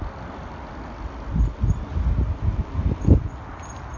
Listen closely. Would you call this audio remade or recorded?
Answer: recorded